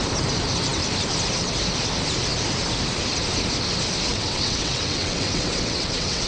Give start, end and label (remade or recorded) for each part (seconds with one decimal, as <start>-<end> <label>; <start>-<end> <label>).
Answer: 0.0-4.1 recorded; 4.1-6.3 remade